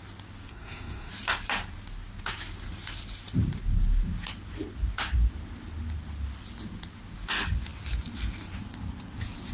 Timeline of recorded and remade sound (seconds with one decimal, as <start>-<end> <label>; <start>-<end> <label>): 0.0-0.5 recorded; 0.5-1.1 remade; 1.1-9.5 recorded